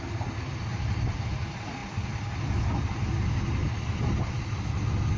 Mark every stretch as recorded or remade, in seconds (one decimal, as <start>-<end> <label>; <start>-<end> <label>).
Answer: 0.0-5.2 recorded